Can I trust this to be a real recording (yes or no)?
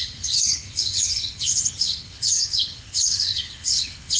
no